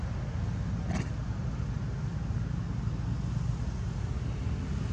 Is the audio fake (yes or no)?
no